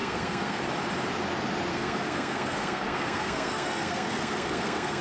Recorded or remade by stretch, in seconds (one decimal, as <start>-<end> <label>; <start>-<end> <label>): 0.0-0.6 remade; 0.6-1.7 recorded; 1.7-5.0 remade